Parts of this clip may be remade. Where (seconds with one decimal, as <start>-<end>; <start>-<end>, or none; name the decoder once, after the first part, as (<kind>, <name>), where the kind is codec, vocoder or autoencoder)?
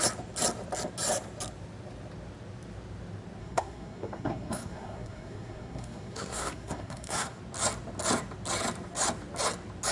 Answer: 3.4-7.4 (codec, SNAC)